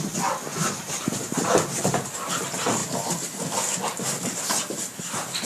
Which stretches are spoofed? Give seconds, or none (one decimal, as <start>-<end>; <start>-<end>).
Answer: 0.5-2.1

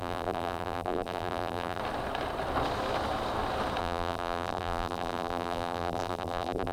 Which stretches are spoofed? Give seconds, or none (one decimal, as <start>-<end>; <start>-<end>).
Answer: 0.0-1.8; 3.8-6.7